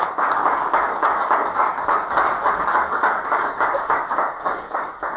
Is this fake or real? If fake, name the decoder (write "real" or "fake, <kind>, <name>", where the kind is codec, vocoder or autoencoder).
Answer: fake, codec, DAC